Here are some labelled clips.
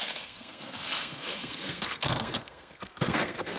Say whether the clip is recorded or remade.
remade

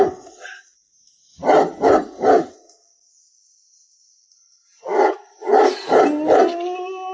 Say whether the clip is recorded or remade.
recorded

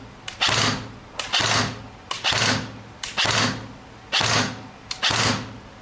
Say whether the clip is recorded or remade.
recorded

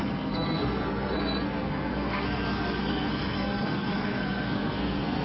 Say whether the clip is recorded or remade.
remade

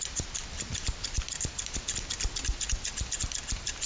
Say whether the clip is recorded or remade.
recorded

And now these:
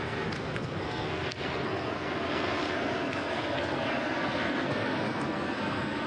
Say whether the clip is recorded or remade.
remade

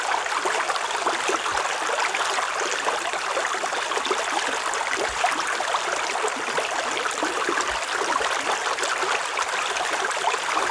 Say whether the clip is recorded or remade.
recorded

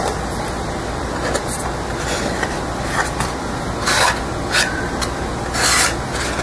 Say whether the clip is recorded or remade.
recorded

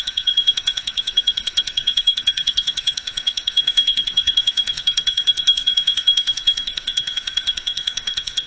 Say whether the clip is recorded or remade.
remade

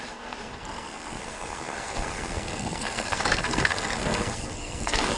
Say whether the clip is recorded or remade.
remade